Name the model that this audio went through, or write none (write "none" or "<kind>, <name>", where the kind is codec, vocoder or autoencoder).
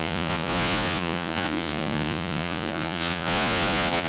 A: vocoder, Vocos